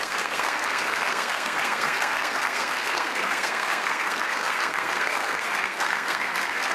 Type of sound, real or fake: fake